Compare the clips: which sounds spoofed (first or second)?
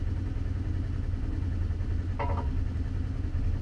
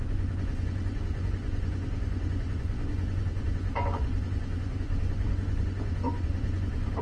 second